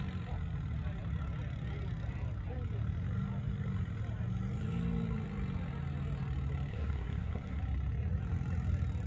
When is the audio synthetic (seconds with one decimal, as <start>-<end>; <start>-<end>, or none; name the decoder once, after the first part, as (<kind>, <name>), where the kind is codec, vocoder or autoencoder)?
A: 6.7-7.6 (codec, SNAC)